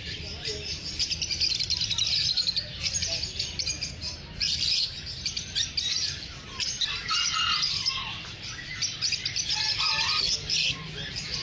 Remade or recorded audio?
recorded